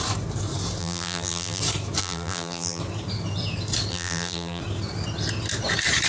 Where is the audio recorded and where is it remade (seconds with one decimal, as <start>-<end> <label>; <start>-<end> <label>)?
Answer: 0.0-0.8 recorded; 0.8-1.6 remade; 1.6-2.0 recorded; 2.0-2.8 remade; 2.8-3.9 recorded; 3.9-4.6 remade; 4.6-6.1 recorded